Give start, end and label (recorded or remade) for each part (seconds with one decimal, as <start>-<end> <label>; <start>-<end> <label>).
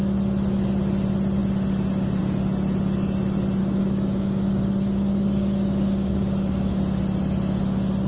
0.0-3.6 recorded; 3.6-6.8 remade; 6.8-8.1 recorded